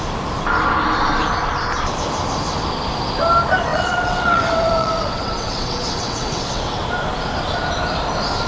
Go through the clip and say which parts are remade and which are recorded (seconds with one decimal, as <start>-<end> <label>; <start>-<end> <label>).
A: 0.0-3.7 recorded; 3.7-6.8 remade; 6.8-8.5 recorded